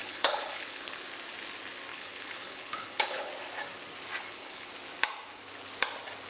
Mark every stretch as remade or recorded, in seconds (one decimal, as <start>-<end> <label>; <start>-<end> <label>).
0.0-0.9 remade; 0.9-1.9 recorded; 1.9-3.3 remade; 3.3-4.2 recorded; 4.2-4.7 remade; 4.7-6.3 recorded